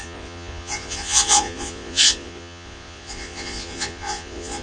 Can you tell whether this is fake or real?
fake